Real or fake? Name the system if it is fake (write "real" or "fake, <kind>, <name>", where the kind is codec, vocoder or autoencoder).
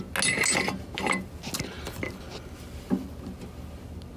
real